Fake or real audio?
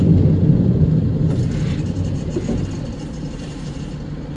real